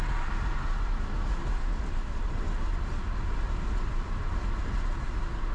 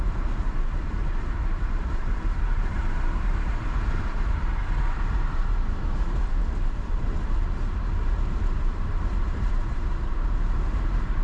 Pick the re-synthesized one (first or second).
second